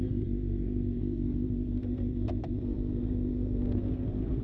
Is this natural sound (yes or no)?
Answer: no